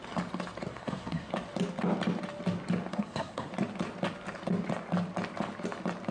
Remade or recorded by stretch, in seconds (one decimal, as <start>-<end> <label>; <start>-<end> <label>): 0.0-0.7 recorded; 0.7-1.3 remade; 1.3-2.9 recorded; 2.9-3.5 remade; 3.5-6.1 recorded